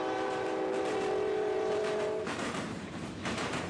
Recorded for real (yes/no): no